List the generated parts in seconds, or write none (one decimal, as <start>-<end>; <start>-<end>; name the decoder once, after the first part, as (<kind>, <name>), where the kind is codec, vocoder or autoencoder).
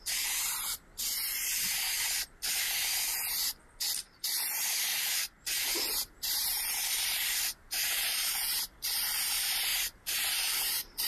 0.0-0.9 (vocoder, BigVGAN v2); 5.6-11.1